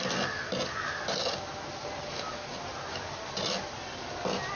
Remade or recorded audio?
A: recorded